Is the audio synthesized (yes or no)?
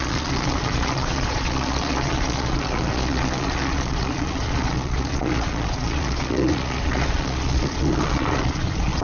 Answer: yes